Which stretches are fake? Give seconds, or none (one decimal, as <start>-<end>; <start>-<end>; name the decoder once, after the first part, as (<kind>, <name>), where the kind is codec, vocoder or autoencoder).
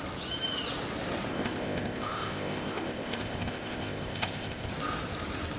1.3-4.7 (codec, ZipCodec)